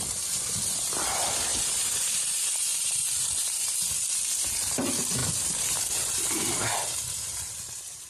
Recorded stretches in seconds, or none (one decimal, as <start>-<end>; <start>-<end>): 0.0-1.5; 2.1-8.1